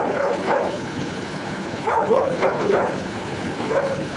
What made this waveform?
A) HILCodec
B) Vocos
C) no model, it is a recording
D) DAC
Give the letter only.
A